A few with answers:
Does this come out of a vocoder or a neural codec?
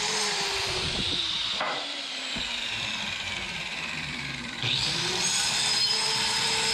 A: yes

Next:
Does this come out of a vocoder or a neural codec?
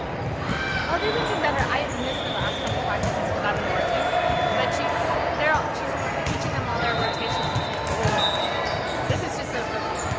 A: no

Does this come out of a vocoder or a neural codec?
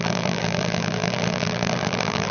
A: yes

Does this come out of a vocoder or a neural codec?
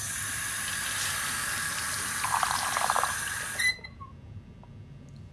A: no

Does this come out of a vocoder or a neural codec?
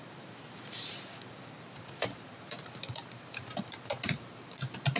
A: yes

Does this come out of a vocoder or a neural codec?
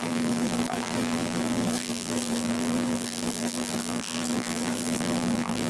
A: yes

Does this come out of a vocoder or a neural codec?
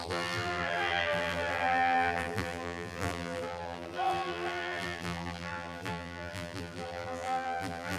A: yes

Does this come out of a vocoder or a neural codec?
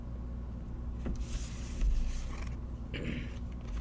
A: no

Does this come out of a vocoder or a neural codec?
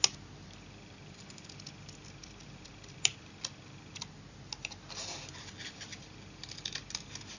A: no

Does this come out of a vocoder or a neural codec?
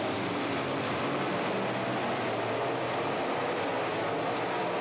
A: no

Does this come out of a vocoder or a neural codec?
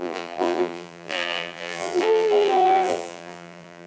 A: yes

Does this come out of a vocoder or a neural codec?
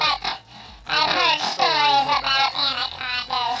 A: no